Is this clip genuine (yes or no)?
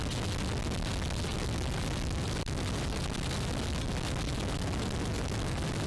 yes